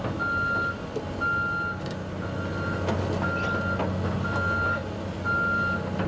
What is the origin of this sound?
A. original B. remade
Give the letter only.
A